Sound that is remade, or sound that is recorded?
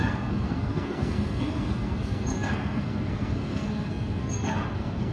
remade